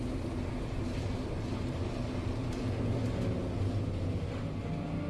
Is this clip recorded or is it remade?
recorded